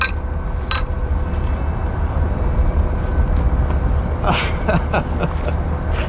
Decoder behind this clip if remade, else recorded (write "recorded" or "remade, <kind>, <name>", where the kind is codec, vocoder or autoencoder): recorded